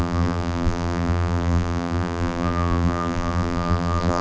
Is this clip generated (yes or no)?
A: yes